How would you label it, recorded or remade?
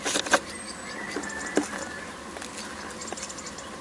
recorded